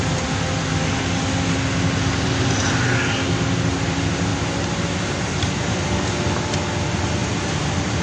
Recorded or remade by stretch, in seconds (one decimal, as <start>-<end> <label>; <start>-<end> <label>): 0.0-8.0 recorded